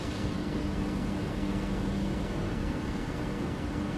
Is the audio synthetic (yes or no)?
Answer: yes